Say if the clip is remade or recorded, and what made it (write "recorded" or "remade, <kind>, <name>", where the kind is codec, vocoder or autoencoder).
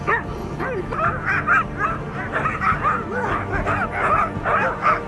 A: recorded